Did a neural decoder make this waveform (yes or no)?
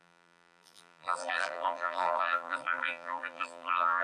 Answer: yes